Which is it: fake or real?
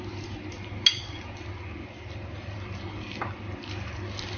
real